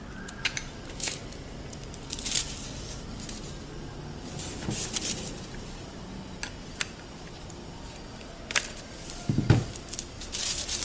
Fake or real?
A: real